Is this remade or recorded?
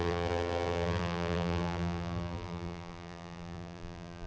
remade